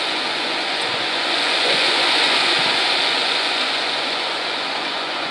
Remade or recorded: remade